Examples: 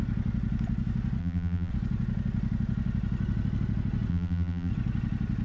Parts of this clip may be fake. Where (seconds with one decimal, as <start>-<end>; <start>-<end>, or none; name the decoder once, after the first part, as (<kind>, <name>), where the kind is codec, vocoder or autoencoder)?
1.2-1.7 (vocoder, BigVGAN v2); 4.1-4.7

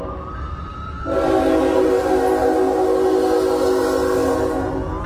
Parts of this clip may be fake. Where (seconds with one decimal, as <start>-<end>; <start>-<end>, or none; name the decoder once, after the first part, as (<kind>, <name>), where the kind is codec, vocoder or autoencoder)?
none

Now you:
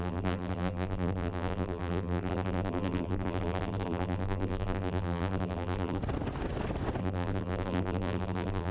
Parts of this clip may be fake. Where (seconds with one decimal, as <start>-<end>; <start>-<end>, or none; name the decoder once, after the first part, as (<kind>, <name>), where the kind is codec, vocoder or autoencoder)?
0.0-6.0 (vocoder, BigVGAN v2); 7.0-8.7

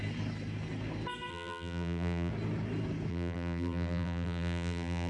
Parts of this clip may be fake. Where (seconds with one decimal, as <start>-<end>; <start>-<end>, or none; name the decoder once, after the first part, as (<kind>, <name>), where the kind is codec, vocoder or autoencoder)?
1.3-2.3 (vocoder, BigVGAN v2); 3.1-5.1

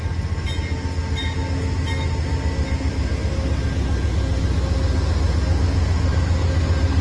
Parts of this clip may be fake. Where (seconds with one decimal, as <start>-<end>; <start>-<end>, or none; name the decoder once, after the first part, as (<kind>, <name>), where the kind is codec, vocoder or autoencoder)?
none

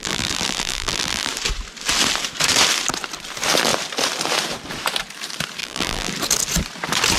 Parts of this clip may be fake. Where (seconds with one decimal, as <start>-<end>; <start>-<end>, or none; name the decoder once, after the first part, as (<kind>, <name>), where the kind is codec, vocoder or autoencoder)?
0.0-1.3 (vocoder, BigVGAN v2); 5.6-6.1

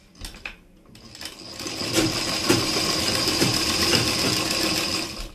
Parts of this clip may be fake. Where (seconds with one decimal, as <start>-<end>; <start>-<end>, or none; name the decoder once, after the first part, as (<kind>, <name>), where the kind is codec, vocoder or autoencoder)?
2.4-4.4 (vocoder, BigVGAN v2)

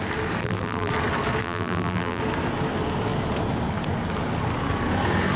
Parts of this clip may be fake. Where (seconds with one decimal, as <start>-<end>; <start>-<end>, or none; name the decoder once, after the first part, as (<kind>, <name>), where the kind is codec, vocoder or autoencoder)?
0.4-0.9 (vocoder, BigVGAN v2); 1.4-2.2